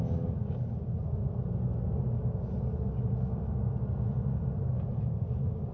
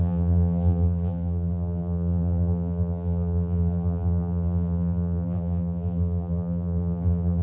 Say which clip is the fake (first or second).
second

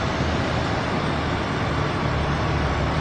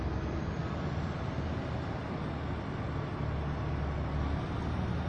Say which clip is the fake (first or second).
first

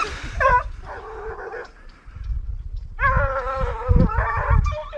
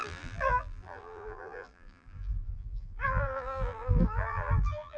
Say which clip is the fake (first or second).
second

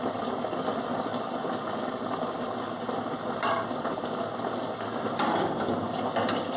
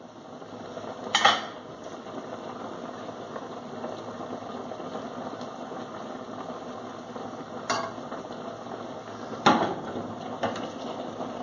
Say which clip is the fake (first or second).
first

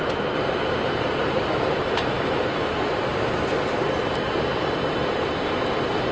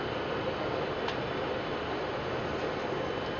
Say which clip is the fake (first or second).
first